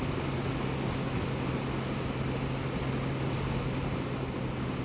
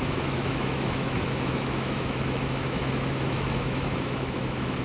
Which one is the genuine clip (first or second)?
first